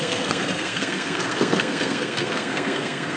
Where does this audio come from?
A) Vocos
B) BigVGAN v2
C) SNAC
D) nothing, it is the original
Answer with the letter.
C